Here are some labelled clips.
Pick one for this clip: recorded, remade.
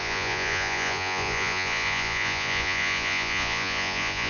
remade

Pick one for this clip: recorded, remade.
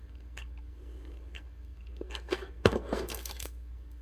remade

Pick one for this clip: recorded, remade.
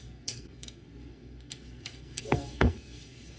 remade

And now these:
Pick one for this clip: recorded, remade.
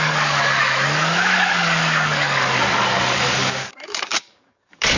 remade